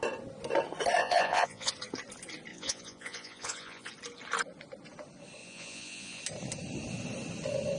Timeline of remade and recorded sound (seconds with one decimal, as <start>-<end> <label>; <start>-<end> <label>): 0.0-1.0 recorded; 1.0-1.7 remade; 1.7-2.5 recorded; 2.5-3.9 remade; 3.9-5.4 recorded; 5.4-6.2 remade; 6.2-7.8 recorded